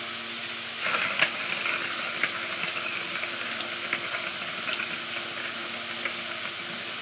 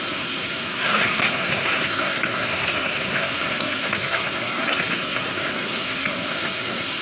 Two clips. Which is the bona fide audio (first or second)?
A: first